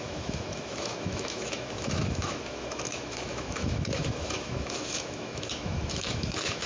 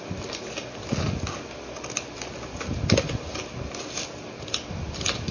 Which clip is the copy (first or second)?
first